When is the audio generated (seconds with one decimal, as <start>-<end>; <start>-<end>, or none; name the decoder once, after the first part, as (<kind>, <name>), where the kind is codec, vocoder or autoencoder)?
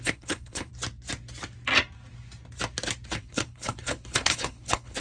0.0-0.7 (codec, HILCodec); 3.1-5.0